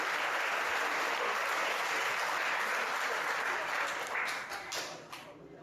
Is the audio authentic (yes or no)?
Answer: yes